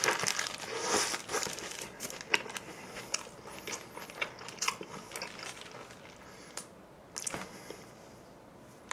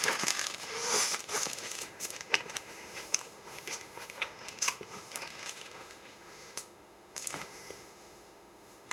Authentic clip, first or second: first